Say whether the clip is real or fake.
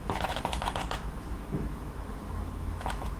fake